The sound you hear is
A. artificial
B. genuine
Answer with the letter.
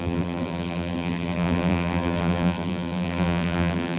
A